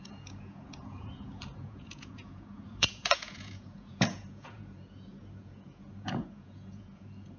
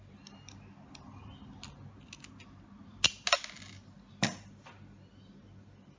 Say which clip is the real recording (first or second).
second